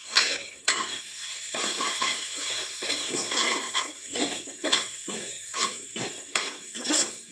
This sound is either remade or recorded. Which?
remade